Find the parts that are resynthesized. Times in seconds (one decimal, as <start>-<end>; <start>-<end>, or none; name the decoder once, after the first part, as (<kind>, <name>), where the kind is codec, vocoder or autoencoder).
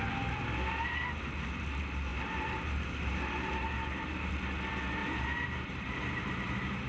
2.1-4.3 (vocoder, BigVGAN v2); 5.0-6.9